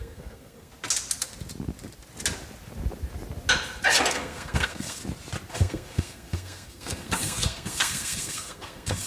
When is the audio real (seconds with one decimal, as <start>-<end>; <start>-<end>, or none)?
0.7-4.1; 5.0-5.5

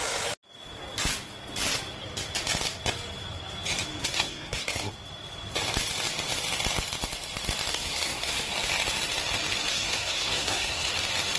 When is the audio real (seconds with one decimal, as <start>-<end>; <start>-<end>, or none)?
0.0-4.0; 4.9-7.7; 8.5-9.7; 10.9-11.4

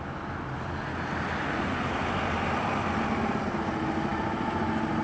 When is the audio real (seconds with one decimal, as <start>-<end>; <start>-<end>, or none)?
0.0-5.0

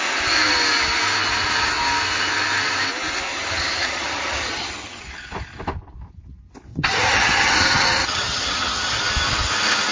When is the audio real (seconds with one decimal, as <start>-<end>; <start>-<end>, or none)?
0.0-3.3; 5.0-6.7; 9.0-9.9